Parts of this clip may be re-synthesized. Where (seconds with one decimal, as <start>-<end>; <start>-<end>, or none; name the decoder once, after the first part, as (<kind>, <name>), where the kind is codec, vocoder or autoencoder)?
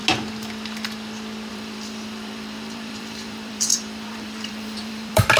1.5-5.4 (vocoder, BigVGAN v2)